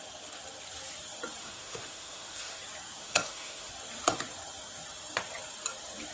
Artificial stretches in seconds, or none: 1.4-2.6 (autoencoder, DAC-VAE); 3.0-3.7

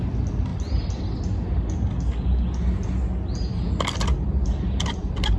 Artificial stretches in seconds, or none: none

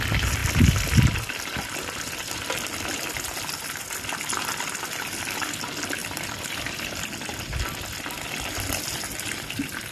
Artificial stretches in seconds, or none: none

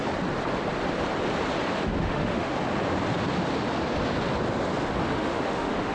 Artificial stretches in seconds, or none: 2.0-2.5 (autoencoder, DAC-VAE); 5.1-5.9